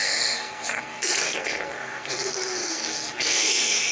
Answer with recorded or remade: remade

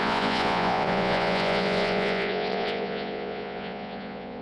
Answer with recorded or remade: remade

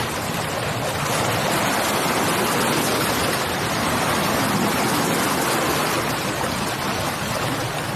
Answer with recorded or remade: recorded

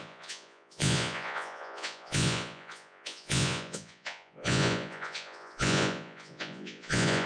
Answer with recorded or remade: remade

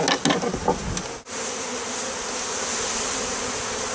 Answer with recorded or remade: recorded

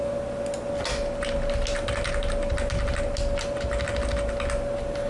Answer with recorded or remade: recorded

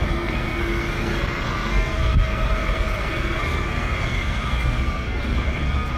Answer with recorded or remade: remade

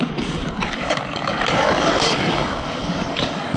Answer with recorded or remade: remade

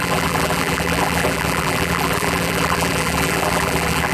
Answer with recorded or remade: remade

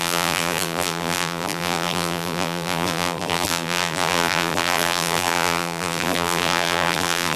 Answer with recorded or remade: remade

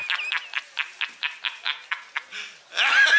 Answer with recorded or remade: recorded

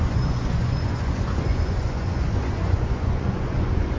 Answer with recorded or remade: remade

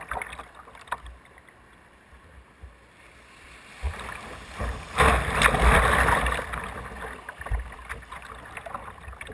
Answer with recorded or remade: recorded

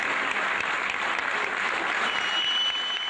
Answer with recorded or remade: recorded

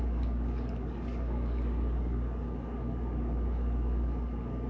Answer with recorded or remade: remade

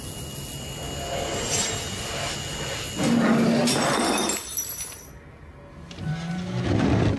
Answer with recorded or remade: recorded